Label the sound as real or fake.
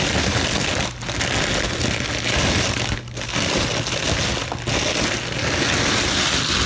real